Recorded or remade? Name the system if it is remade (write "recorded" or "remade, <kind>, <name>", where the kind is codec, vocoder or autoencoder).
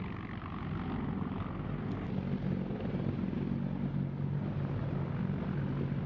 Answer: recorded